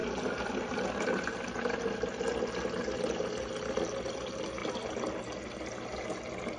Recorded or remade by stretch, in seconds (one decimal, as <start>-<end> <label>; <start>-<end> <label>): 0.0-6.6 recorded